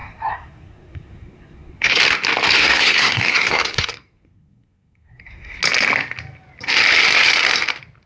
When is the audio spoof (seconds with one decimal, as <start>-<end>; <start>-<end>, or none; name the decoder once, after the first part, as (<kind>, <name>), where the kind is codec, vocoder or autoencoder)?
0.0-2.0 (codec, SNAC); 2.6-5.6